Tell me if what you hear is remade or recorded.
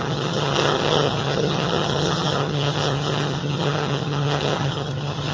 remade